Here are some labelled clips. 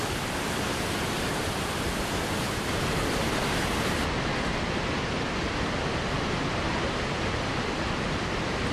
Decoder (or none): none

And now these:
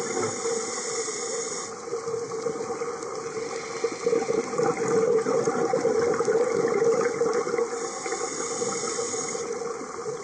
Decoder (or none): none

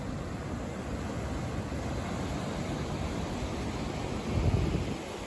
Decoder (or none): none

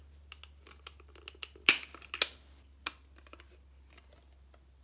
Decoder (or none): none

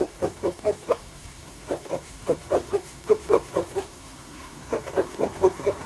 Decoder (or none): codec, SNAC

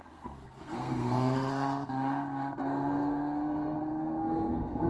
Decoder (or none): codec, SNAC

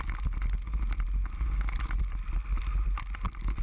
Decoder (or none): none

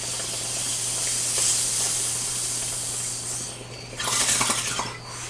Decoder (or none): none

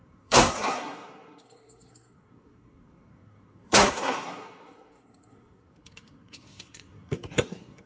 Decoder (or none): codec, SNAC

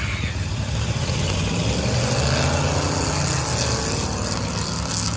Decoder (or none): none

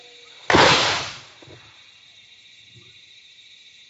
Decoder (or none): none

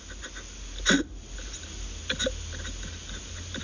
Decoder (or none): none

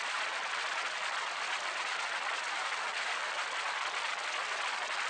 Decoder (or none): none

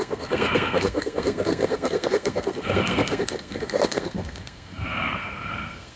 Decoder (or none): codec, SNAC